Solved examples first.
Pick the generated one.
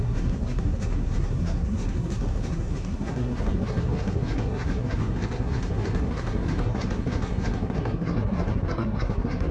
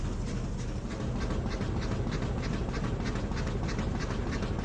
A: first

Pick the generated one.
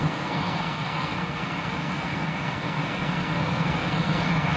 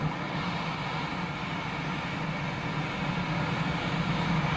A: first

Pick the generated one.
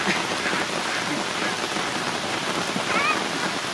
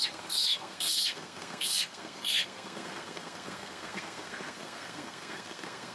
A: second